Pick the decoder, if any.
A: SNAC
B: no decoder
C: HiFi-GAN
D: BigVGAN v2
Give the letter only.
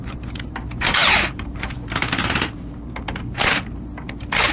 D